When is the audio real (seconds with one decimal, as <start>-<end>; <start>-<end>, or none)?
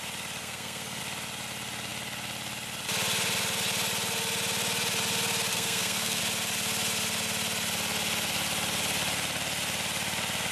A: 0.0-0.4; 1.0-5.5; 6.2-10.5